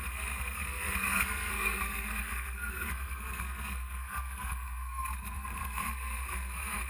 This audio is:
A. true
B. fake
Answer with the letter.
B